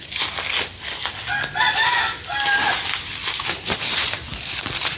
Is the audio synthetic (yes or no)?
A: no